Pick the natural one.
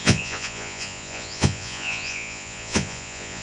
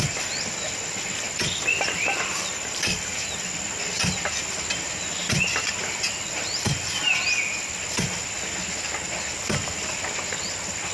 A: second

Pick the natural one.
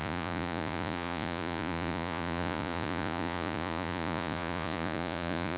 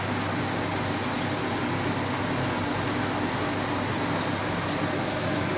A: second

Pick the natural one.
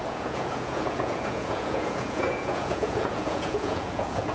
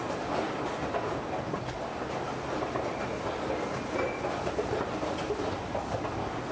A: second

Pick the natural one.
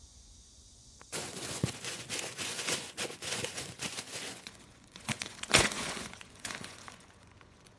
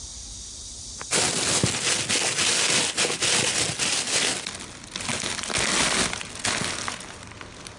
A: second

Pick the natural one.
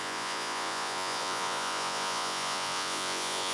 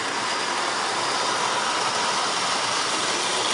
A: second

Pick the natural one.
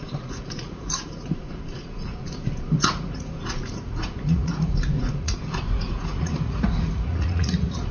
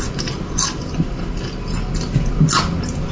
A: second